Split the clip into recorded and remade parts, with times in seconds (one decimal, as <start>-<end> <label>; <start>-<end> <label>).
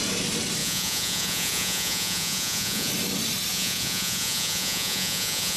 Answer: 0.0-0.6 recorded; 0.6-2.9 remade; 2.9-3.5 recorded; 3.5-5.6 remade